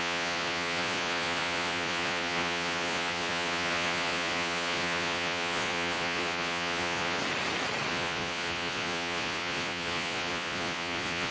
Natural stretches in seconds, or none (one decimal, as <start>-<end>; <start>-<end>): 7.2-7.9